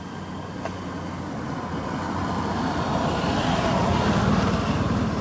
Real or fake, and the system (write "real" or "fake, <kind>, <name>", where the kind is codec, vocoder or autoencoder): real